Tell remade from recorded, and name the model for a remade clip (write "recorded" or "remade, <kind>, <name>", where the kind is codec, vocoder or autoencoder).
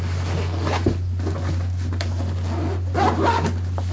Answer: recorded